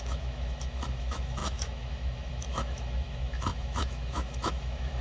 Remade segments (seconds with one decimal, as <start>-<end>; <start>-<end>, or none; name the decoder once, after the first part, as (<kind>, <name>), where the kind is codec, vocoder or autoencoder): 0.0-5.0 (autoencoder, DAC-VAE)